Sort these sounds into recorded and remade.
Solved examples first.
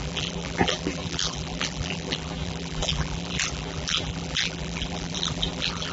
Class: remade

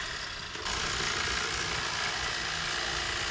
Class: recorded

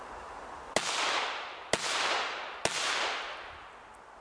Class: recorded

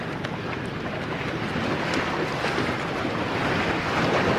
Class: recorded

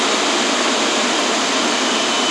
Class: recorded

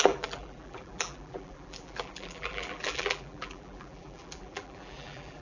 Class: remade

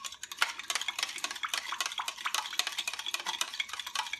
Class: recorded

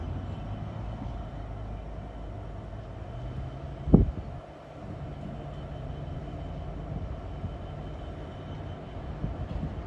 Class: recorded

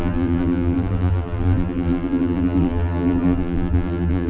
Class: remade